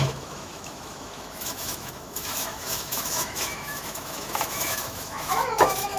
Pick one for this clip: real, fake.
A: fake